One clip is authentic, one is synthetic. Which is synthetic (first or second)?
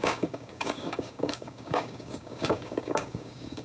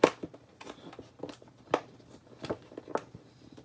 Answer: first